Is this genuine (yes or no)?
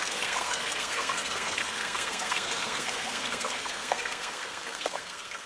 no